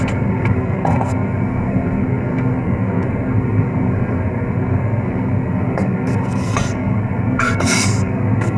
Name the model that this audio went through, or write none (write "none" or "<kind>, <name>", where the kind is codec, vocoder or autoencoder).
codec, SNAC